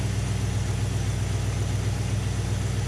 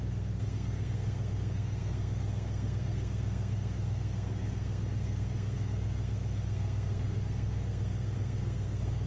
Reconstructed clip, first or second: second